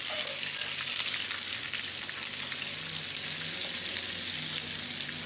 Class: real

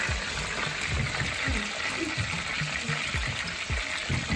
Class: real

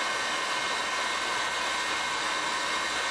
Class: real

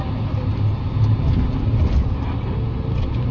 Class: real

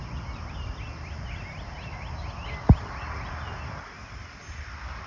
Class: real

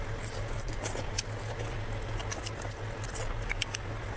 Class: real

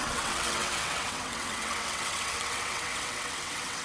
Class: fake